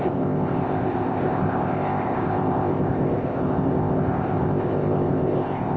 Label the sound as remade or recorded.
remade